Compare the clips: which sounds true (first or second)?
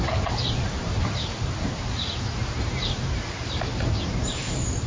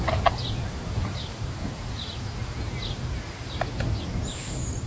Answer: second